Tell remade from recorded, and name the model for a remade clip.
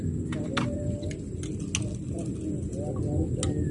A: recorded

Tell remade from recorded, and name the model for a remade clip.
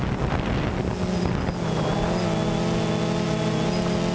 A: recorded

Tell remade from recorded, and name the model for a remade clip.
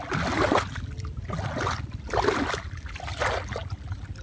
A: recorded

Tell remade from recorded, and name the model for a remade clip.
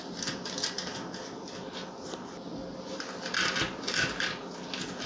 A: recorded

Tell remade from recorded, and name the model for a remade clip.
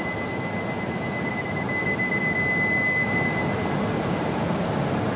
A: recorded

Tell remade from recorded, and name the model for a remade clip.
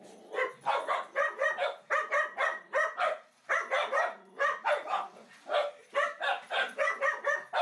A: recorded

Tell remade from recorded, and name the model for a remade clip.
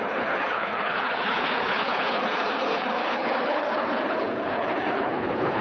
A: remade, codec, HILCodec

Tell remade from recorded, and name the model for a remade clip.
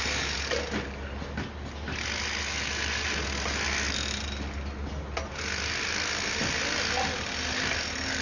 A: recorded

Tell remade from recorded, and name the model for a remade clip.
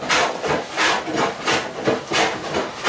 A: recorded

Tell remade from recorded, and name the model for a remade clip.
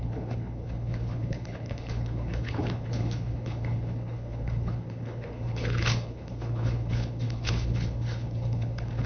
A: remade, codec, HILCodec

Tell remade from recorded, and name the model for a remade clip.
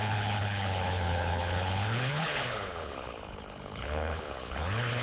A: remade, codec, HILCodec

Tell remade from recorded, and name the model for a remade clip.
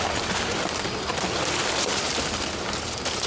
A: recorded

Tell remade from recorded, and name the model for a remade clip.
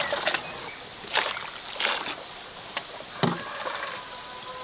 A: recorded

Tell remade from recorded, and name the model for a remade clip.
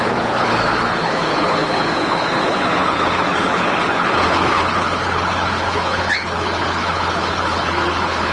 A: remade, codec, HILCodec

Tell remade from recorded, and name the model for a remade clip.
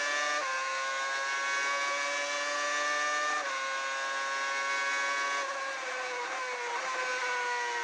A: recorded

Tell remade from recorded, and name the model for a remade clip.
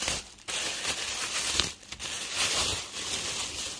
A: recorded